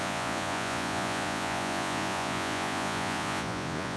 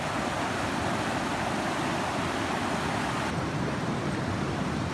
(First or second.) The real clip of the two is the second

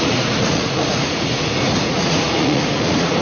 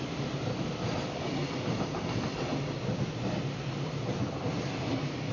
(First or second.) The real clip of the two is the second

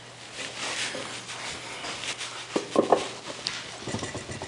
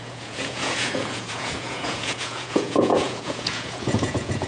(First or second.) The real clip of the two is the first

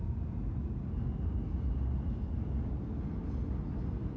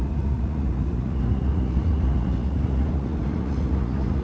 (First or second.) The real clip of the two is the first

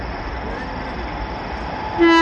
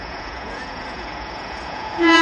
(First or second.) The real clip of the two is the first